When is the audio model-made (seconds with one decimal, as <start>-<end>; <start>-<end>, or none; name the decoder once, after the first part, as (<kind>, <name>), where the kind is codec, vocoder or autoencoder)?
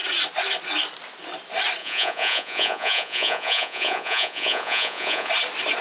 1.8-5.3 (vocoder, Vocos)